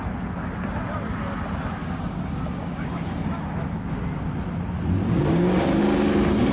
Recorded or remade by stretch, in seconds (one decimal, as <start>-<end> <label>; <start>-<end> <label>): 0.0-1.8 recorded; 1.8-3.9 remade; 3.9-5.0 recorded; 5.0-5.8 remade; 5.8-6.5 recorded